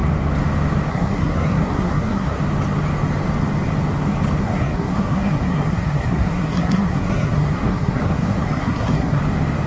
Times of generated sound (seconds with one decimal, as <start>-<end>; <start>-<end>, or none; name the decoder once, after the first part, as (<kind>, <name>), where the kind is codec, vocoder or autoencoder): 0.9-2.4 (codec, SNAC); 4.4-9.2